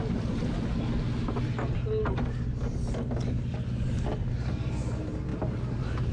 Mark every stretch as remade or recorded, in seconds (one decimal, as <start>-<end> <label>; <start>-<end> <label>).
0.0-6.1 recorded